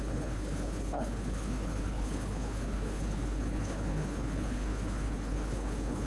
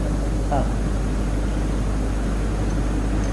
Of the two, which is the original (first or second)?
second